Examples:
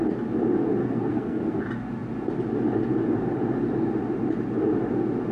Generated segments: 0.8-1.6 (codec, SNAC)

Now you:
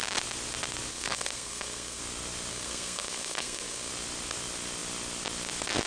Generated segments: 0.9-2.0 (codec, SNAC); 2.5-3.9

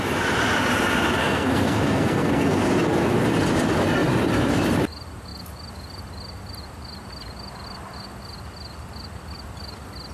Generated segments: 1.2-2.7 (codec, SNAC)

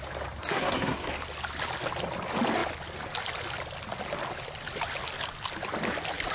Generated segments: 0.4-1.1 (codec, SNAC)

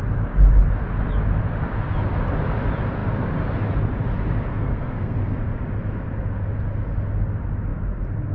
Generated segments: 4.5-5.4 (codec, SNAC)

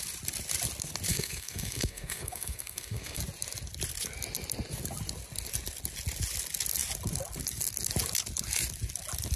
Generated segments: 1.1-3.2 (codec, SNAC)